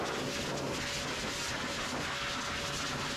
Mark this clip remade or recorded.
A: recorded